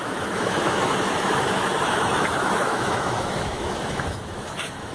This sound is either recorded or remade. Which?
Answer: remade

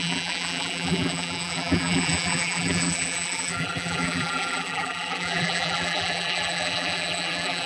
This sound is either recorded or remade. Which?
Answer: remade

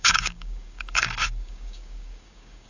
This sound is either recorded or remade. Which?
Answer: remade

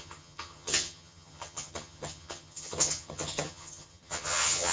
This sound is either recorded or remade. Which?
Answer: remade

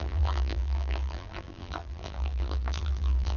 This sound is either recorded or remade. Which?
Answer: remade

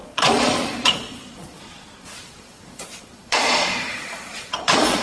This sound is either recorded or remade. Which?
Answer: remade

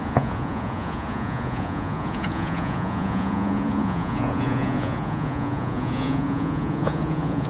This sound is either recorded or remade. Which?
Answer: remade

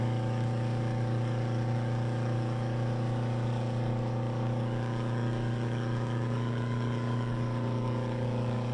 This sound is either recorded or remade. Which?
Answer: remade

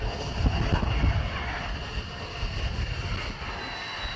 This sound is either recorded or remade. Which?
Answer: recorded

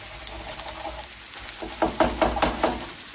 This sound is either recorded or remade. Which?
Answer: recorded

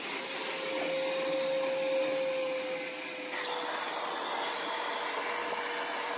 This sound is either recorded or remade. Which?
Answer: recorded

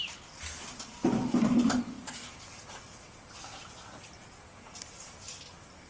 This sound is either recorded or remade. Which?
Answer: recorded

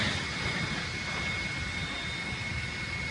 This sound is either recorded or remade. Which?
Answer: recorded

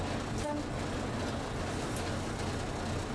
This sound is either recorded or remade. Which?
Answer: recorded